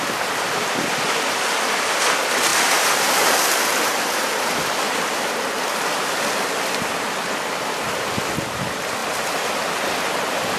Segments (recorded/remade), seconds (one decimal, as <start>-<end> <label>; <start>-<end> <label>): 0.0-2.5 recorded; 2.5-3.9 remade; 3.9-9.0 recorded; 9.0-9.5 remade; 9.5-10.6 recorded